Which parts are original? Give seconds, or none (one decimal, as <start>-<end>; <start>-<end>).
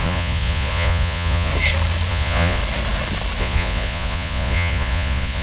1.5-2.1; 2.6-3.4